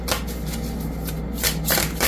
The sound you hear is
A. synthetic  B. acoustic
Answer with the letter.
B